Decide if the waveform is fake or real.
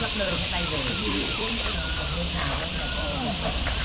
fake